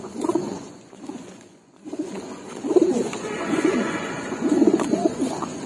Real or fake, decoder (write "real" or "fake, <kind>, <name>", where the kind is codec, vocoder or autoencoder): fake, vocoder, Vocos